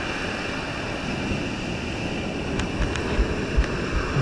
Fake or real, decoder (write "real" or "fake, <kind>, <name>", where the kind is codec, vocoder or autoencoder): real